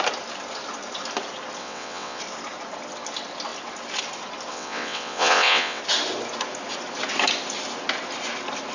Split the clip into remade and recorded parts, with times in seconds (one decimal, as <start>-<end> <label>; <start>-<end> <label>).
0.0-1.6 recorded; 1.6-2.2 remade; 2.2-4.5 recorded; 4.5-5.8 remade; 5.8-8.7 recorded